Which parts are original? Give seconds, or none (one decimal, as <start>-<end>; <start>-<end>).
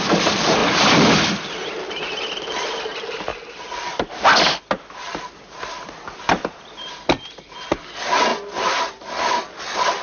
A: 0.0-0.6; 1.3-8.3